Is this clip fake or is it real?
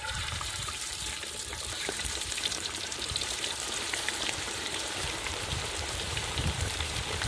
fake